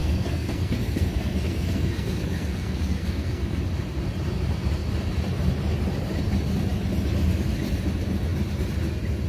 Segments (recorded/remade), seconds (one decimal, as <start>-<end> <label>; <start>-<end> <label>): 0.0-3.6 remade; 3.6-9.3 recorded